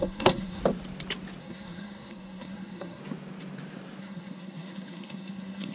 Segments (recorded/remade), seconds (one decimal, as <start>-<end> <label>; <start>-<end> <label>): 0.0-0.6 remade; 0.6-1.4 recorded; 1.4-3.0 remade; 3.0-4.0 recorded; 4.0-5.7 remade